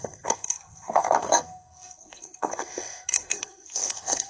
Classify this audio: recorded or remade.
remade